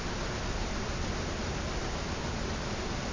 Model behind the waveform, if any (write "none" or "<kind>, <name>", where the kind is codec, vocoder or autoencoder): none